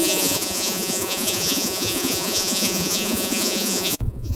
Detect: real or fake fake